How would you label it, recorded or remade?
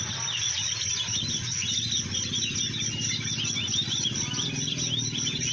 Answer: remade